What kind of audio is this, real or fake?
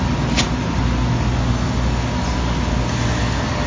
real